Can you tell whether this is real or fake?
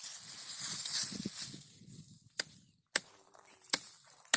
real